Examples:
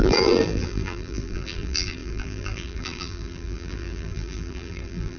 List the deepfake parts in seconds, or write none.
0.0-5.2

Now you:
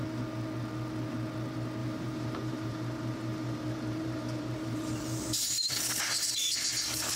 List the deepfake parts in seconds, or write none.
1.8-5.7

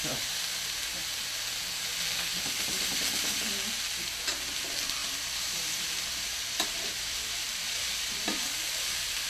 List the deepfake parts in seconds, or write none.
5.0-8.5

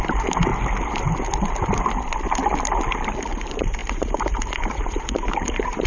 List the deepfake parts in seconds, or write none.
0.0-0.5; 3.2-5.9

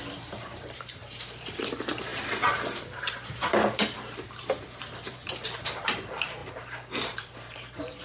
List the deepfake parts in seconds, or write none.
0.0-8.0